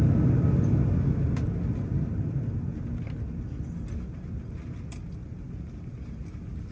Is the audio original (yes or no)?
yes